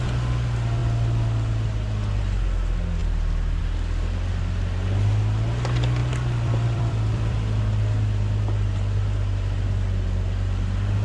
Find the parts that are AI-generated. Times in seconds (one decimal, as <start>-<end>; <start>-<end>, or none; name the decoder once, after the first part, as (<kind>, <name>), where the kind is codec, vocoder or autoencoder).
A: 6.0-7.6 (vocoder, BigVGAN v2)